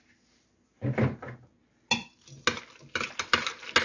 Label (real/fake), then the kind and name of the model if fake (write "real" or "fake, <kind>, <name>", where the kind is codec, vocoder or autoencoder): real